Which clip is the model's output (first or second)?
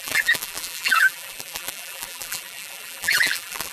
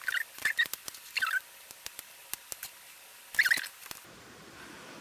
first